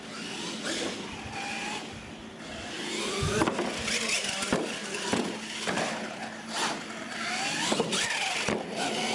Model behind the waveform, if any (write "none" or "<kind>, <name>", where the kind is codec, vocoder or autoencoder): none